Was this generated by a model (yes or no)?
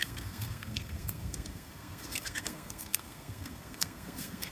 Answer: yes